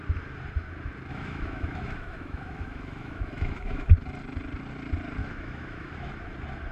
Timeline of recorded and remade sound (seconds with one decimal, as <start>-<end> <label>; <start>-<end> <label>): 0.0-1.1 recorded; 1.1-3.9 remade; 3.9-5.2 recorded; 5.2-6.1 remade; 6.1-6.7 recorded